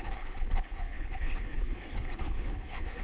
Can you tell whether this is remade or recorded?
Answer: remade